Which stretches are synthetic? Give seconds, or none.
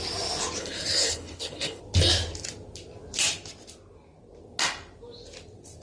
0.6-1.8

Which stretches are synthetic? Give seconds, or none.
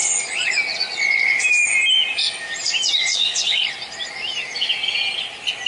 3.1-3.7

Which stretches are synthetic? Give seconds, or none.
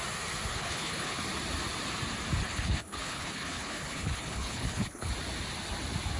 0.5-1.2; 2.4-5.1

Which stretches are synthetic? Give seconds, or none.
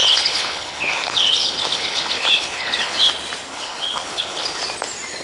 0.0-3.1; 3.5-4.6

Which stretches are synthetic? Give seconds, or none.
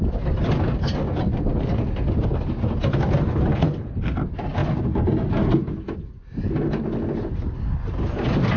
3.5-4.1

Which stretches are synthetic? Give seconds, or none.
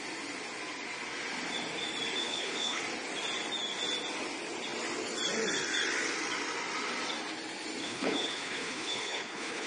2.2-2.8; 7.8-9.7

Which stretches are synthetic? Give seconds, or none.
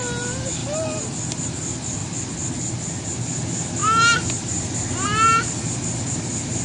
none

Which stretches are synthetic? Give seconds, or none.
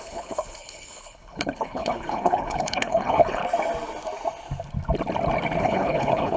0.0-3.4; 5.6-6.4